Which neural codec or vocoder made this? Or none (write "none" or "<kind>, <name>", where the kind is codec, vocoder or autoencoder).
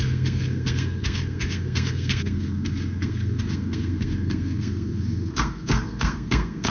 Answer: codec, SNAC